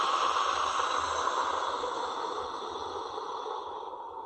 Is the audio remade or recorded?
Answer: recorded